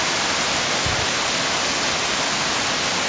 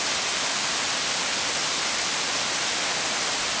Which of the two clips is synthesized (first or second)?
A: second